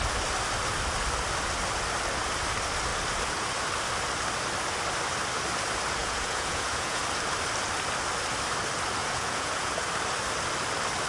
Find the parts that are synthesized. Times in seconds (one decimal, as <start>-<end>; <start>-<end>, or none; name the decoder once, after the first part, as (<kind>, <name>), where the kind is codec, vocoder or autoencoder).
6.0-7.0 (vocoder, Vocos); 9.0-9.8